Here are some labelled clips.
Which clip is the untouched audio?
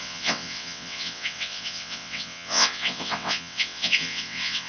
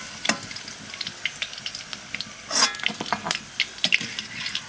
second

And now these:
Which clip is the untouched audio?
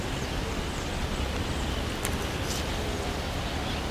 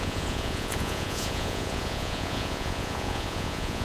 first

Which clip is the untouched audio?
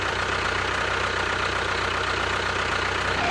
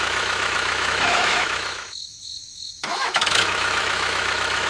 first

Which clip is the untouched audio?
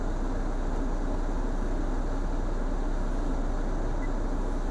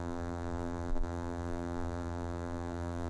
first